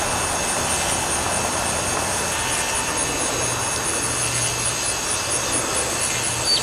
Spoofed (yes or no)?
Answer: no